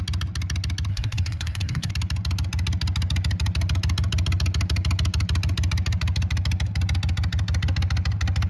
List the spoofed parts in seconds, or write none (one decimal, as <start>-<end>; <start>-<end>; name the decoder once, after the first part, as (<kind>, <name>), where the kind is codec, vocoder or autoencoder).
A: 0.9-1.9 (codec, SNAC)